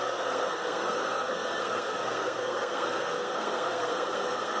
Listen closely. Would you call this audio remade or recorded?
remade